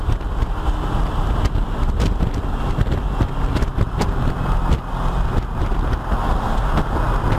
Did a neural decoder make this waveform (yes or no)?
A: no